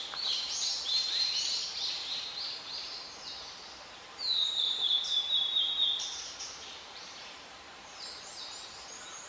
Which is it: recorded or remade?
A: remade